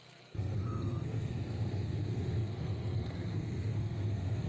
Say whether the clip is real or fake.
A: fake